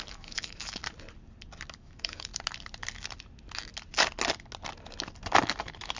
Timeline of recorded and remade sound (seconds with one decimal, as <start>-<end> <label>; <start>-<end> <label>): 0.0-0.8 remade; 0.8-1.8 recorded; 1.8-2.3 remade; 2.3-6.0 recorded